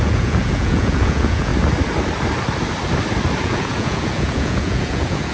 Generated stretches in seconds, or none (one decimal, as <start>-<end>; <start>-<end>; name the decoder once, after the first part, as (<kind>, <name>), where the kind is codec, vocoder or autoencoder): 0.0-1.5 (vocoder, Vocos); 3.4-5.3